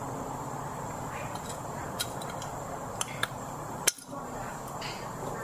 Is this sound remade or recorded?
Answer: recorded